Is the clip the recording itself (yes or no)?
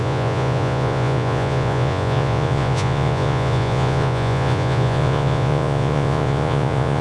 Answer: no